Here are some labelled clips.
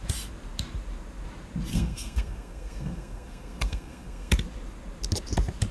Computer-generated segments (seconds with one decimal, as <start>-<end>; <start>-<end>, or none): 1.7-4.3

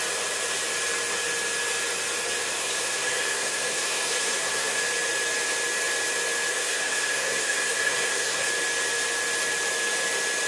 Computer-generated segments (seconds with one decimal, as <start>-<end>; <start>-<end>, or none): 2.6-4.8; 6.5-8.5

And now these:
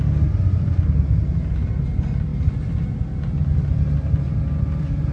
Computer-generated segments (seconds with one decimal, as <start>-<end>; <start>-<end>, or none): none

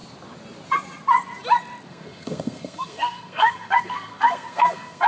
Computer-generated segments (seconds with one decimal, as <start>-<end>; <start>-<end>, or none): 1.9-5.1

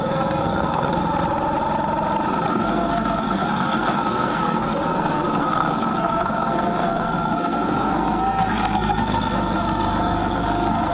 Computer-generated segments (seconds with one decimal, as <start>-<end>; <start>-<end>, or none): 0.0-1.0; 2.5-10.9

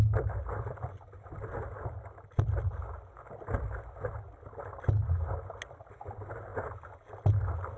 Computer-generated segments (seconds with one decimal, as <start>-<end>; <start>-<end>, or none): none

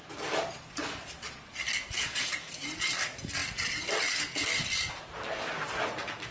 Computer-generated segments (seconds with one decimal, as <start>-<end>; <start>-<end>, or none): none